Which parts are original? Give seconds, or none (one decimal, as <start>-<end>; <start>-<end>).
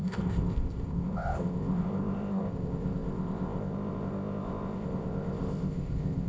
none